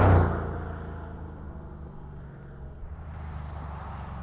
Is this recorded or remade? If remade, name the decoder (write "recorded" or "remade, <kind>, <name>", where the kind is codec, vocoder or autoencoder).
recorded